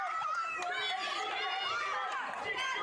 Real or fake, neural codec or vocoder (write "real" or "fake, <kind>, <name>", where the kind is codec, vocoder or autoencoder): real